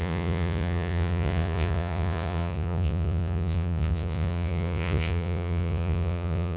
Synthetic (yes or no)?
yes